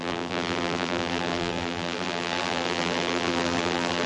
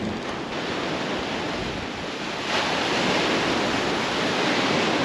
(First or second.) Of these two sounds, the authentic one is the second